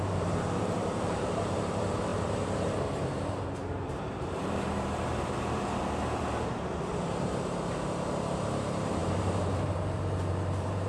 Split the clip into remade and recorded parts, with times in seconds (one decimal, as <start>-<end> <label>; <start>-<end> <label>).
0.0-10.9 remade